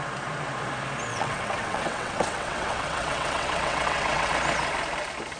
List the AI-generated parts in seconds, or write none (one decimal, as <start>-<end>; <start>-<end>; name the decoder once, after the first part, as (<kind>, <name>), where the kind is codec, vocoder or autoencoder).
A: 1.1-4.3 (vocoder, WaveNeXt)